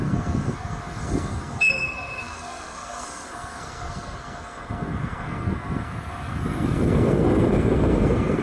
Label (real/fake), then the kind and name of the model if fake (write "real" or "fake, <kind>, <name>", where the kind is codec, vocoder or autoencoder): fake, codec, SNAC